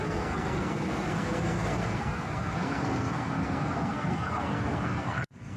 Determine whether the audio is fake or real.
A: fake